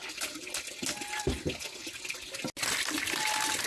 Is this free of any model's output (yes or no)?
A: yes